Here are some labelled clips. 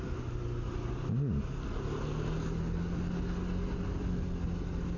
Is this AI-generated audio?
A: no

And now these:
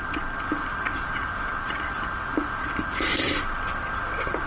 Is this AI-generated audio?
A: no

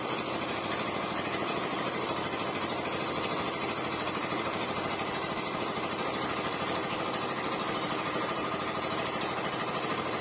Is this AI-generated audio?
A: yes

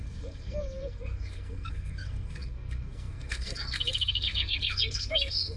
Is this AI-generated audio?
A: yes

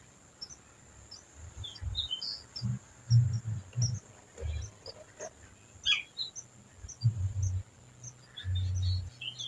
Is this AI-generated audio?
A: no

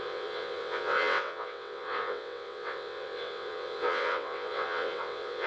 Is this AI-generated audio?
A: yes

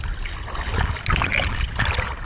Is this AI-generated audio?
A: no